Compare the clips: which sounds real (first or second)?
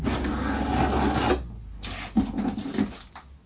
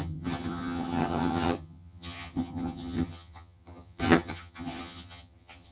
first